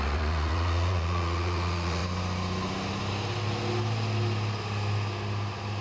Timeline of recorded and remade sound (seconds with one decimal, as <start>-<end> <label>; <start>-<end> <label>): 0.0-2.0 remade; 2.0-5.8 recorded